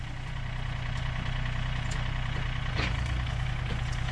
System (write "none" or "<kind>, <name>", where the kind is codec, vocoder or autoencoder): vocoder, Vocos